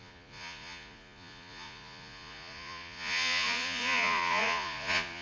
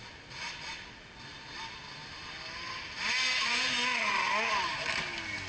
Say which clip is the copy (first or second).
first